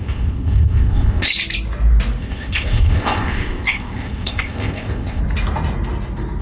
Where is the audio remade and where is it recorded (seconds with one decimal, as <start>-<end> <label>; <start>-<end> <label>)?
0.0-1.3 remade; 1.3-2.2 recorded; 2.2-5.2 remade; 5.2-6.4 recorded